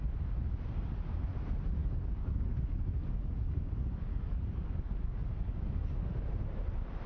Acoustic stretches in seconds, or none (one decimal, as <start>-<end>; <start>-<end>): 0.0-1.8; 6.1-7.1